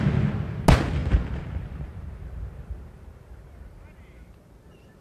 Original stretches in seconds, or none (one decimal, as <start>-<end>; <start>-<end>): 0.0-1.0; 2.1-5.0